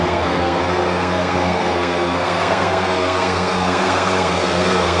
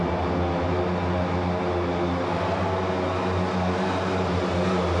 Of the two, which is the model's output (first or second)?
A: first